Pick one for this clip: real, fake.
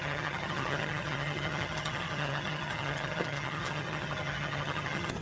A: fake